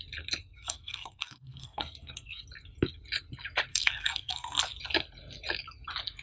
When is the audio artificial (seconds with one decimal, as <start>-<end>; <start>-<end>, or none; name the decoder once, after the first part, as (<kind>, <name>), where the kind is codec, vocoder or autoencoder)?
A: 0.4-2.4 (codec, SNAC); 3.7-4.6